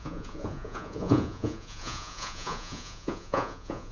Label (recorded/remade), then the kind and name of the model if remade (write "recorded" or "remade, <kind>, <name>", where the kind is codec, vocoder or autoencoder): remade, vocoder, Vocos